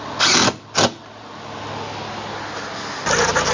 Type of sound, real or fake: real